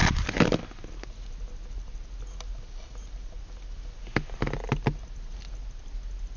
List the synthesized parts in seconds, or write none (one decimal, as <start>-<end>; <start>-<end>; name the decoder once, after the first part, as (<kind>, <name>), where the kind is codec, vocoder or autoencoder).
none